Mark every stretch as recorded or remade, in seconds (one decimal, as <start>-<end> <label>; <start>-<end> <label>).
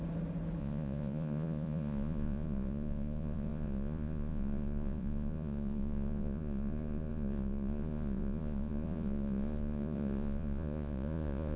0.0-0.6 recorded; 0.6-11.6 remade